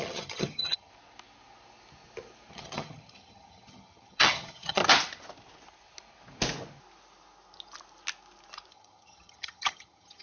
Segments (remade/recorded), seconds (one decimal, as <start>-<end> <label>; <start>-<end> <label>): 0.0-0.9 remade; 0.9-2.5 recorded; 2.5-4.8 remade; 4.8-8.7 recorded; 8.7-10.2 remade